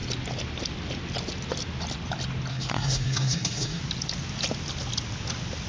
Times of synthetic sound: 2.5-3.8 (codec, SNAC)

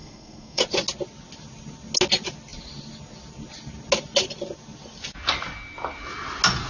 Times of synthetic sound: 0.0-0.6 (codec, SNAC)

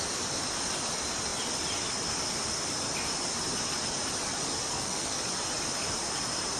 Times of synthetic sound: 4.7-5.2 (codec, SNAC)

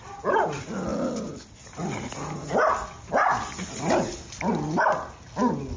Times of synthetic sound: none

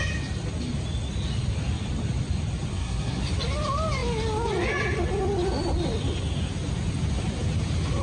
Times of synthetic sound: 2.7-3.2 (codec, SNAC)

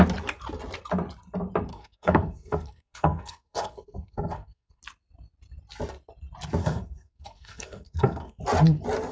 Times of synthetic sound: 1.7-4.8 (codec, SNAC); 6.6-8.4

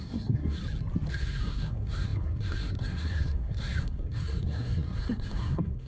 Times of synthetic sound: 0.0-0.6 (codec, SNAC); 1.1-5.9

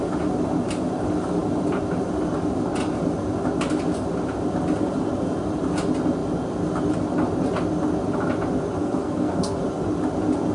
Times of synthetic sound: 8.8-9.6 (codec, SNAC)